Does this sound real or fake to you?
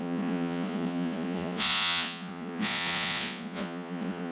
fake